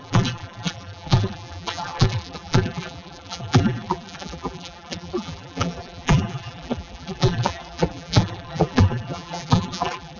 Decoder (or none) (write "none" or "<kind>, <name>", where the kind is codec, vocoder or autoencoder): vocoder, BigVGAN v2